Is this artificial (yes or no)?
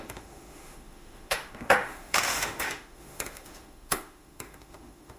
yes